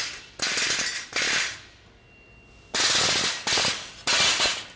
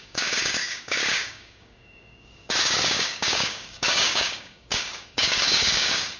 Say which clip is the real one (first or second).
first